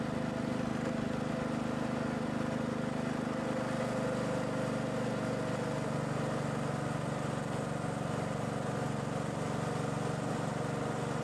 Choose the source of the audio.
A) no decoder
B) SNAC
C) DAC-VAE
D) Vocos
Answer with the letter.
A